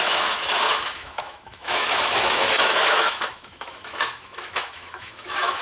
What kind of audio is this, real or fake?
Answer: fake